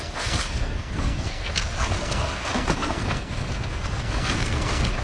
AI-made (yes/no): yes